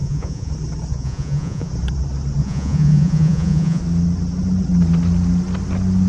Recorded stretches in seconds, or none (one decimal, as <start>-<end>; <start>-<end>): 0.5-0.9; 1.7-2.4; 3.8-6.1